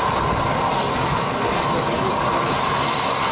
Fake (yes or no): no